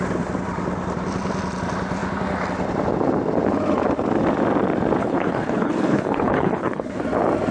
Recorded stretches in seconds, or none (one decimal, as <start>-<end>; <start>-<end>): 0.0-5.0; 7.0-7.5

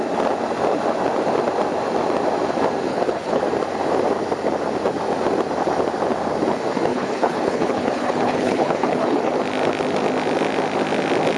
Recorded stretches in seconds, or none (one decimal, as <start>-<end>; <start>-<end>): 0.0-2.9; 3.4-6.9; 9.3-11.4

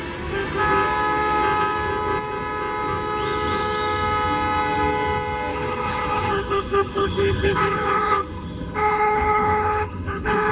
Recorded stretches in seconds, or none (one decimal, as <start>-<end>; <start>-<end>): 0.0-5.5

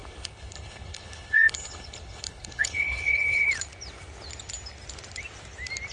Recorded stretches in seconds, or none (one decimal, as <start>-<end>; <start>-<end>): 3.5-5.9

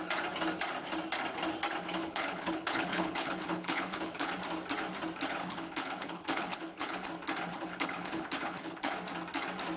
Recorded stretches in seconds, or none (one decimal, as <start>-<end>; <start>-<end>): 0.0-2.0; 4.3-5.4; 7.1-7.5; 8.9-9.8